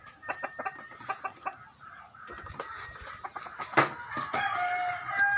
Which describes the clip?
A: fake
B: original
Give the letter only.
B